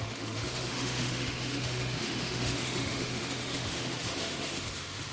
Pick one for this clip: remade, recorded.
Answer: remade